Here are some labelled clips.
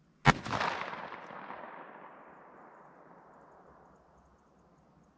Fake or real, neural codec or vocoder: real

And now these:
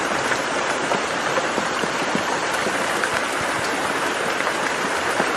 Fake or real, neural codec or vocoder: fake, vocoder, BigVGAN v2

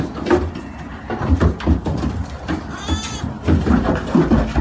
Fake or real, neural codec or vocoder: real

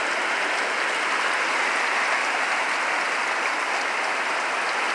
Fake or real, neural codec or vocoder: real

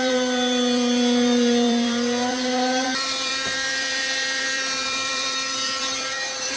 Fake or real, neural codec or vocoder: fake, vocoder, BigVGAN v2